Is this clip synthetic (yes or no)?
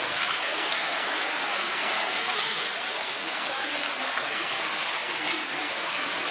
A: yes